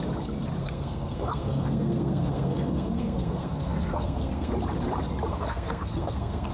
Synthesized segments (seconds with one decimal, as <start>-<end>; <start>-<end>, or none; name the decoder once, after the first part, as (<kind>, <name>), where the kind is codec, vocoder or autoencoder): 0.6-4.5 (codec, SNAC); 5.3-6.5